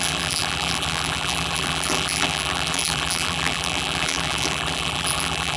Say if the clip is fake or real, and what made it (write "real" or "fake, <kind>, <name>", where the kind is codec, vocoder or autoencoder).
fake, vocoder, BigVGAN v2